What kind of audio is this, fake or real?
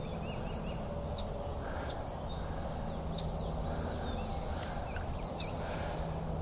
real